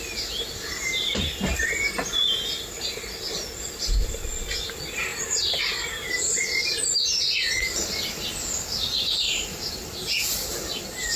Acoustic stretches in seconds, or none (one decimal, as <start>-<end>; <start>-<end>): 0.0-11.2